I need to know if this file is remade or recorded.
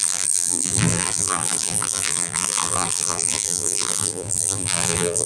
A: remade